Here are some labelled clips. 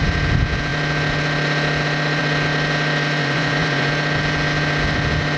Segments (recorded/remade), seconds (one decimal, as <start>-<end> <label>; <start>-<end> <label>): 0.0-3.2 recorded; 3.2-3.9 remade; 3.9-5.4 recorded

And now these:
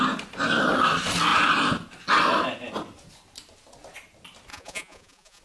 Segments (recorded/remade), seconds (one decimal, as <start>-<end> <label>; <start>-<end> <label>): 0.0-4.5 recorded; 4.5-5.4 remade

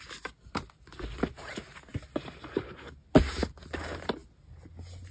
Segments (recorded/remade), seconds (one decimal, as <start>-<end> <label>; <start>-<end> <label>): 0.0-5.1 recorded

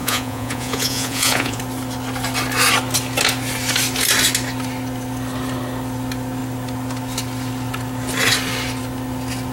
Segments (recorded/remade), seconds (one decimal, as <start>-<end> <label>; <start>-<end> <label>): 0.0-1.6 remade; 1.6-9.5 recorded